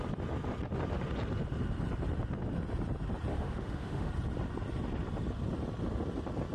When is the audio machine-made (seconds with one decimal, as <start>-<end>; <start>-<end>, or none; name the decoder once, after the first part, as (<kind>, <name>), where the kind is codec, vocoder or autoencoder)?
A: 3.3-4.1 (autoencoder, DAC-VAE)